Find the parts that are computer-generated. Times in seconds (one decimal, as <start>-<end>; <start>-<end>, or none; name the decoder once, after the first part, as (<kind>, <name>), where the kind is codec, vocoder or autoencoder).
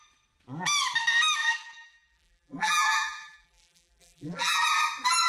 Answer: 1.4-4.6 (vocoder, BigVGAN v2)